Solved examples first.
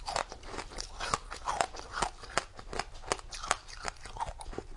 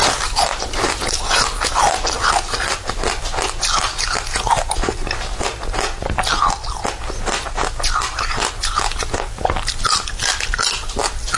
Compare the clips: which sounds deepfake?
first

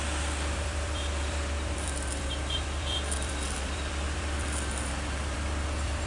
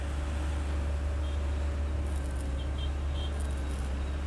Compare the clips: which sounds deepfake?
first